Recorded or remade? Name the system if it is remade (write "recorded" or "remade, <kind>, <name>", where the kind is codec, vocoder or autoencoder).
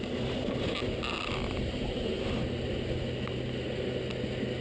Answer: recorded